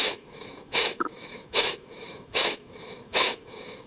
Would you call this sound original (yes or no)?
no